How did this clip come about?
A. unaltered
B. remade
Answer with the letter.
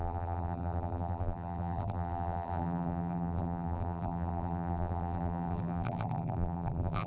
B